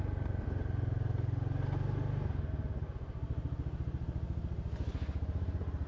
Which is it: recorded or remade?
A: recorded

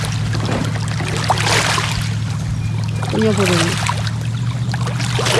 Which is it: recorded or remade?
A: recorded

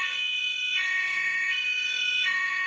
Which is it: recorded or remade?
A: remade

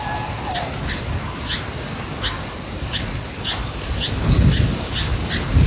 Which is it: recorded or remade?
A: recorded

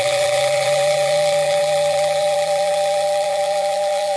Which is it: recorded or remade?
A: remade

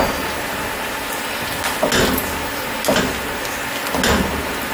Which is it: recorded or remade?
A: recorded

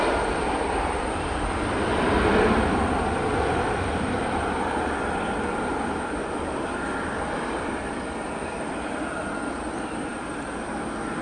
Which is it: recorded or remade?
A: recorded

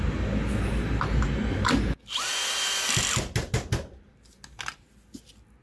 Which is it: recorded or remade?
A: recorded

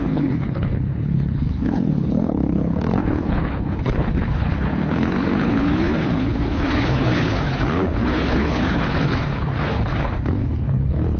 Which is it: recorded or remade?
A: remade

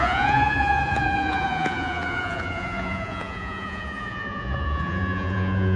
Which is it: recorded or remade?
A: remade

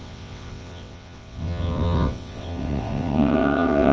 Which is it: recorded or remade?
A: remade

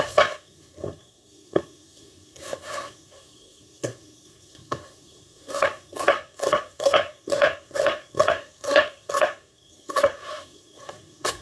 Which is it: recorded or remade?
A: remade